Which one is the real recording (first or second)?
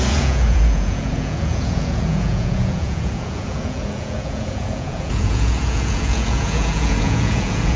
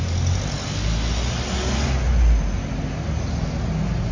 second